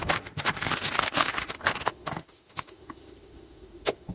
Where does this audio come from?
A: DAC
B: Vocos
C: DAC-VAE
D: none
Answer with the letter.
C